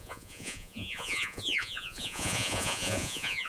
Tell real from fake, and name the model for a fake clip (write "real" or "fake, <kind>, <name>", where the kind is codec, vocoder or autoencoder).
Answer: fake, vocoder, Vocos